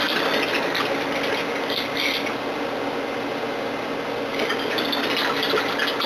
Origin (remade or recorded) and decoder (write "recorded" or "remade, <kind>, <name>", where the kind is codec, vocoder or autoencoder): recorded